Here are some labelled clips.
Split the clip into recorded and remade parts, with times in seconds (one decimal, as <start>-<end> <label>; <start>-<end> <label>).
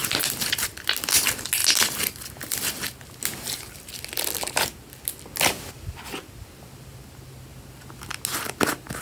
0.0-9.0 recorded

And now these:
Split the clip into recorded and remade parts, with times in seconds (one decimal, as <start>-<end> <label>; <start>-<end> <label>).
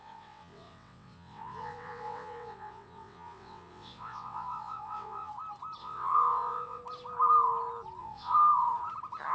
0.0-5.3 remade; 5.3-5.8 recorded; 5.8-6.8 remade; 6.8-8.0 recorded; 8.0-8.5 remade; 8.5-9.3 recorded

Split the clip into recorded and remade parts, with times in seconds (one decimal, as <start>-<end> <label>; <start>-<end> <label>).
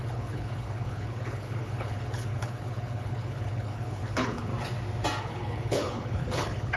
0.0-4.5 remade; 4.5-5.2 recorded; 5.2-6.8 remade